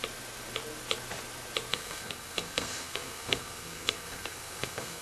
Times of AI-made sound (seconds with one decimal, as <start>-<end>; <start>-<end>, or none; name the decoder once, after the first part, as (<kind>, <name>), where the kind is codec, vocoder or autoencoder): 1.7-5.0 (codec, SNAC)